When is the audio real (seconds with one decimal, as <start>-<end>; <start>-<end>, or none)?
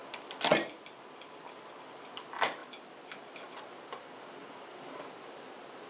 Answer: 0.0-5.9